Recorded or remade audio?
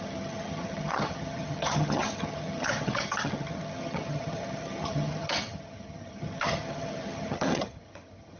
remade